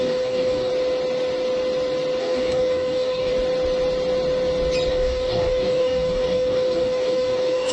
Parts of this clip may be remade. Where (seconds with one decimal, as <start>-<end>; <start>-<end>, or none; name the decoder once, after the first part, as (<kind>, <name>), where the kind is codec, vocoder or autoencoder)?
0.0-0.7 (codec, DAC); 2.2-3.3; 4.9-7.7